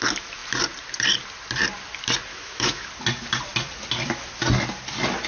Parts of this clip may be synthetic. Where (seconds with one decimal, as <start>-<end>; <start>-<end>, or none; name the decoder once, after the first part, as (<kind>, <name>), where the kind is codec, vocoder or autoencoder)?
2.3-2.9 (autoencoder, DAC-VAE)